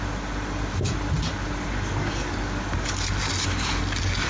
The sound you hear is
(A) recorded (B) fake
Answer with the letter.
A